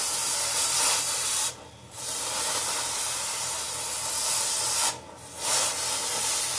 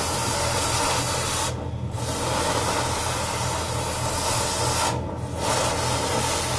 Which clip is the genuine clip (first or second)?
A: second